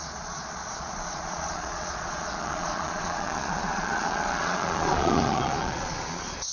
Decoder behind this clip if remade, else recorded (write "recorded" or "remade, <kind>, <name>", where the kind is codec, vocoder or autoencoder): remade, vocoder, Vocos